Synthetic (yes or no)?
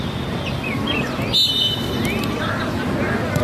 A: no